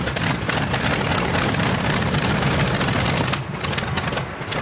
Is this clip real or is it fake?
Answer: real